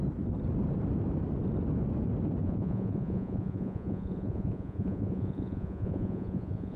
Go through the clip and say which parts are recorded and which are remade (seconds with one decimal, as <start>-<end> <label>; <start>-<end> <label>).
0.0-2.4 recorded; 2.4-6.8 remade